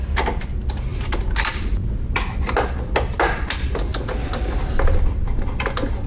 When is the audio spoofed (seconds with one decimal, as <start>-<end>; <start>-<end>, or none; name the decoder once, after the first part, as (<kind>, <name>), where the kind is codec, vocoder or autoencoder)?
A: none